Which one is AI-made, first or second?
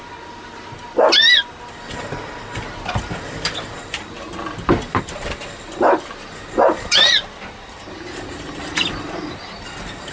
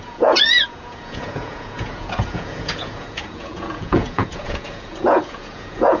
second